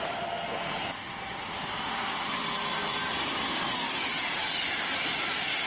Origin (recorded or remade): recorded